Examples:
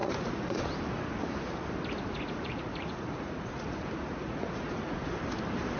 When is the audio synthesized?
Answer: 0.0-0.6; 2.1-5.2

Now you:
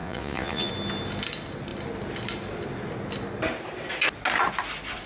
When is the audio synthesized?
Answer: 0.0-0.7

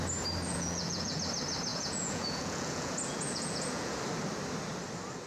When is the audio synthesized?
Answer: 0.5-1.2; 1.7-4.0

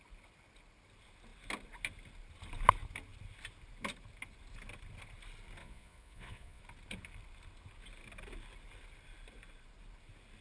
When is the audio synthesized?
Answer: 5.6-6.6

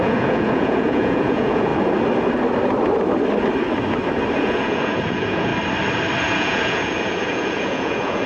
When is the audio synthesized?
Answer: 0.0-1.7; 4.4-5.5; 6.2-8.3

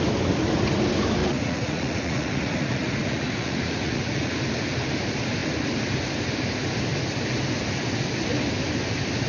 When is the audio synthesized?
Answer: 1.2-4.3